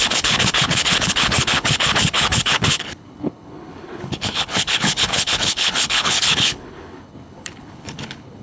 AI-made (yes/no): yes